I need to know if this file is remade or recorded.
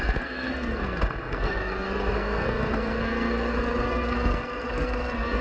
remade